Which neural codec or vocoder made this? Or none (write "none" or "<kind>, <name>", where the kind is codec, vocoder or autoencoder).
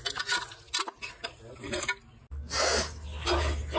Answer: none